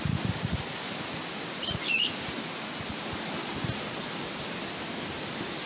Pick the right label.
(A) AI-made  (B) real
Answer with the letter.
B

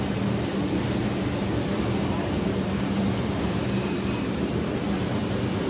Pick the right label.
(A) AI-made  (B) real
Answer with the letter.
B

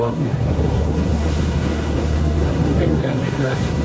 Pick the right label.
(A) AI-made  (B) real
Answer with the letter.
A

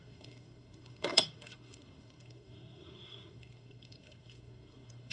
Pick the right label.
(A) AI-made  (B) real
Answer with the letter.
A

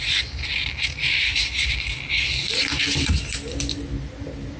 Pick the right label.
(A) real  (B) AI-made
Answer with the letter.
A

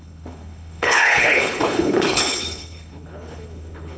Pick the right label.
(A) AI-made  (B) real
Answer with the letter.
A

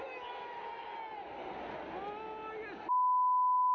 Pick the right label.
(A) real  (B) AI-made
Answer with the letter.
A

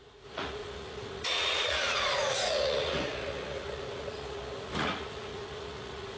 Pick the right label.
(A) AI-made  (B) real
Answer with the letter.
A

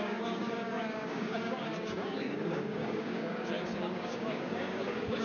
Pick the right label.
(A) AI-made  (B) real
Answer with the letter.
A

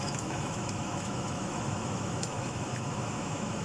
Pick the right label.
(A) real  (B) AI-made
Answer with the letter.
B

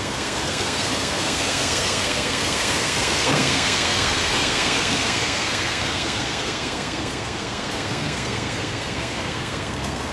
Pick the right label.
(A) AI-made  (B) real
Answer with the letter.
A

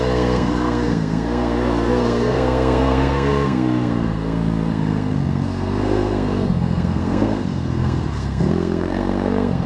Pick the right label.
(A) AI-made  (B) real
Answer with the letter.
A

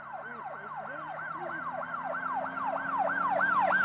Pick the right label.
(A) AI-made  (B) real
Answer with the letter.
B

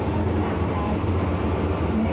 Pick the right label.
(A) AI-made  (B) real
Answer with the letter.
B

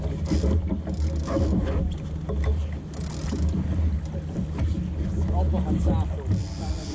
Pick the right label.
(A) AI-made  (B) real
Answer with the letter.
B